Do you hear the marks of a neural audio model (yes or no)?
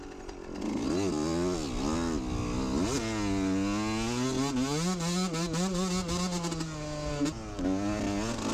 no